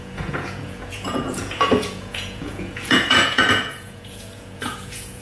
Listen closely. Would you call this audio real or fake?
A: fake